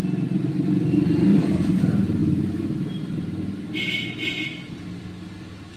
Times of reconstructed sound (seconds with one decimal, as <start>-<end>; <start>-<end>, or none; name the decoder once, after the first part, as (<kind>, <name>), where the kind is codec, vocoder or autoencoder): 0.0-0.5 (vocoder, BigVGAN v2); 1.3-1.8